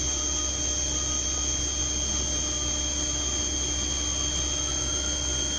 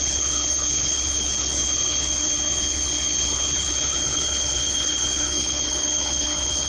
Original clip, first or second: first